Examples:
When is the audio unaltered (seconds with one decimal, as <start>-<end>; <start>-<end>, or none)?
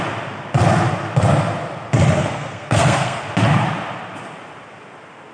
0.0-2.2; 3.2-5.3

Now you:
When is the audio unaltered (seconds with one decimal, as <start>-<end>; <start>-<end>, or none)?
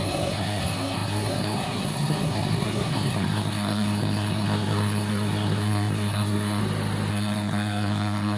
6.6-7.1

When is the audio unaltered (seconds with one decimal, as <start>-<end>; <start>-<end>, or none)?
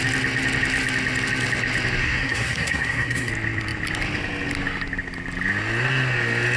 0.0-2.0; 3.3-6.6